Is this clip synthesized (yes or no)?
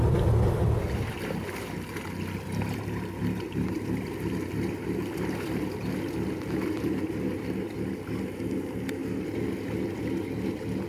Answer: no